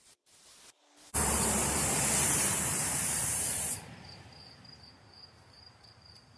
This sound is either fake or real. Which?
fake